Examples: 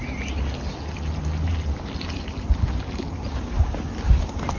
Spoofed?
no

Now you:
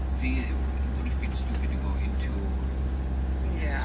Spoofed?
no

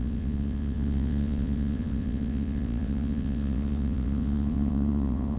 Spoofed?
yes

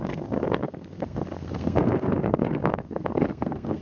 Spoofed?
yes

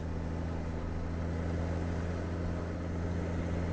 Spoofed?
no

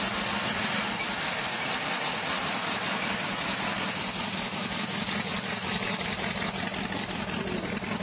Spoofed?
no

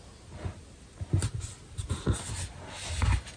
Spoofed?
no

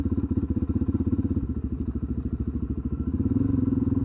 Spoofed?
yes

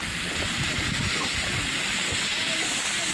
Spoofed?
no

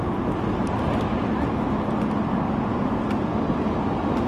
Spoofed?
no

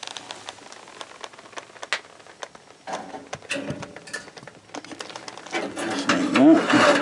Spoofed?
no